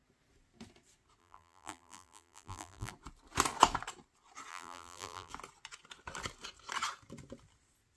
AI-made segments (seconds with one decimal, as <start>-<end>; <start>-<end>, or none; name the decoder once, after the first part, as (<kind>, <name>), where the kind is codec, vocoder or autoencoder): 1.2-2.9 (vocoder, BigVGAN v2); 4.5-5.3